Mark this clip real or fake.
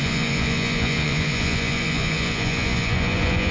fake